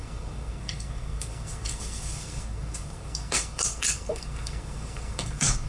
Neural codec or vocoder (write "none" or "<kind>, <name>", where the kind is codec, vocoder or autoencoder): codec, SNAC